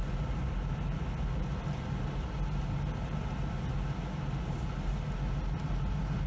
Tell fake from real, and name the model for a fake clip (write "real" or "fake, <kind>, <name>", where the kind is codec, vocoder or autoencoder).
real